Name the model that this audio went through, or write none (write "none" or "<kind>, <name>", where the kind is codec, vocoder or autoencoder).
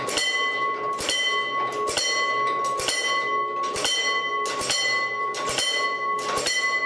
none